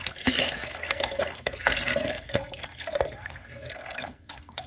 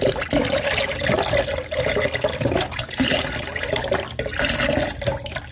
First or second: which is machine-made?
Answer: first